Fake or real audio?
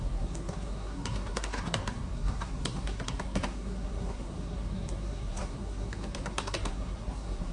fake